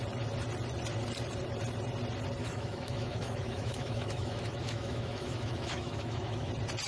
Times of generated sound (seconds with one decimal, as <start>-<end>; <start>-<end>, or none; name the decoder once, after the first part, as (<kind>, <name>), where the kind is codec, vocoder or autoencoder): 2.4-6.5 (autoencoder, DAC-VAE)